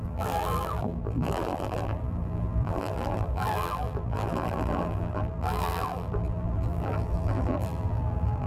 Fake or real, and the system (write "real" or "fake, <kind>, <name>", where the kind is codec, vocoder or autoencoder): fake, vocoder, BigVGAN v2